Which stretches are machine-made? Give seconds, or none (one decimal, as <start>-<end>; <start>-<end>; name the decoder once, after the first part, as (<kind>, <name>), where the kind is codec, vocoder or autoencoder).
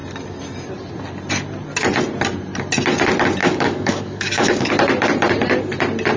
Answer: 3.4-4.7 (codec, DAC)